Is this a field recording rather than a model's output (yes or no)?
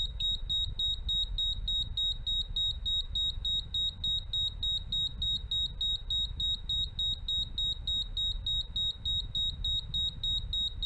yes